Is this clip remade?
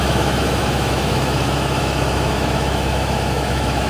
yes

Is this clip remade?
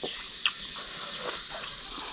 no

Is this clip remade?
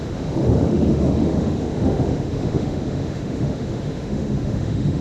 yes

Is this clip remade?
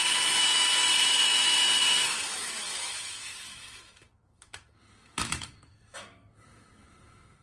yes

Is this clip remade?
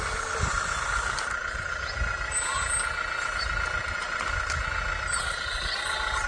no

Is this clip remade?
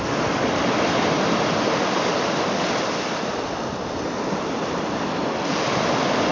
no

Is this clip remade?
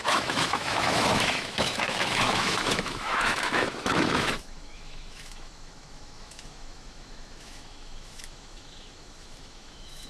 yes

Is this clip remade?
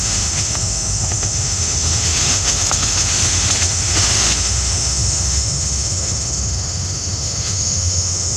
yes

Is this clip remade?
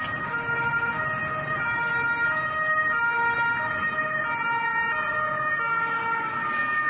no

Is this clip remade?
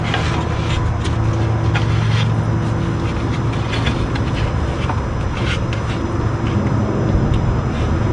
no